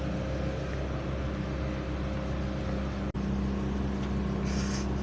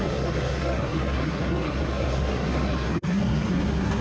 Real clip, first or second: first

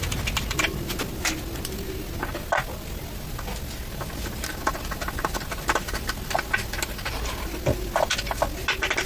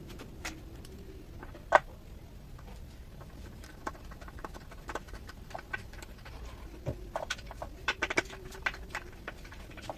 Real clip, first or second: first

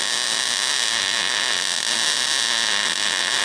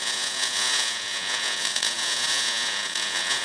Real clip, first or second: first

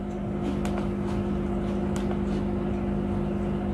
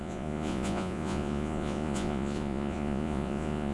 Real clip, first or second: first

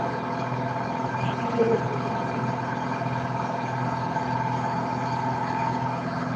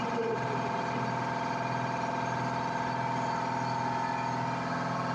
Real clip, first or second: second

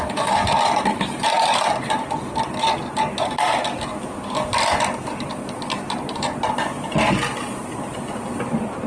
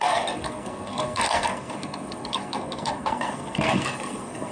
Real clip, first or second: first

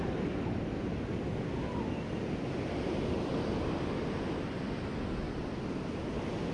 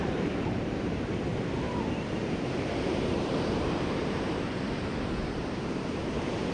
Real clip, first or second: first